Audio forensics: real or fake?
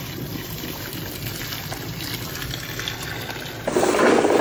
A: real